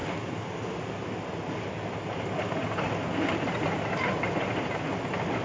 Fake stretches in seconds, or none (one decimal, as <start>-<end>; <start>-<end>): none

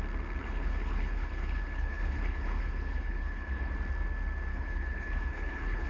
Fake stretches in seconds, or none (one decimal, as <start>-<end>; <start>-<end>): 0.4-3.7; 4.5-5.9

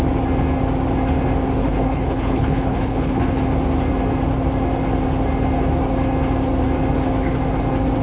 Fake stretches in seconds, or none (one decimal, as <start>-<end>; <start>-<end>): 1.6-3.4

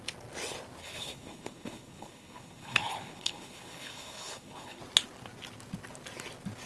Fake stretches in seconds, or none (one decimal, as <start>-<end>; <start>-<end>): 0.8-4.8